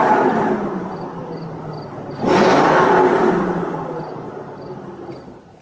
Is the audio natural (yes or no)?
yes